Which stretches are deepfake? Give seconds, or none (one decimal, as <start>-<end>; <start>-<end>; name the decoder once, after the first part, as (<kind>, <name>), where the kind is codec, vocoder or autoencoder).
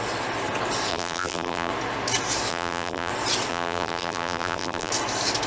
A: 0.9-1.7 (vocoder, BigVGAN v2); 2.5-3.1; 3.5-4.9